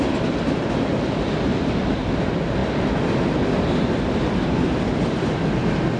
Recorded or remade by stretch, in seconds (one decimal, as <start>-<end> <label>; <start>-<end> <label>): 0.0-1.5 recorded; 1.5-2.2 remade; 2.2-6.0 recorded